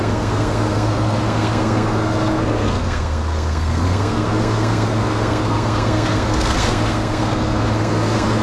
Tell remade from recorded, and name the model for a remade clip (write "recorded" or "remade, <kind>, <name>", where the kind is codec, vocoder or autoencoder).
remade, codec, SNAC